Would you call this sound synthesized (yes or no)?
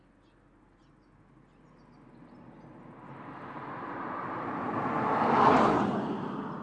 no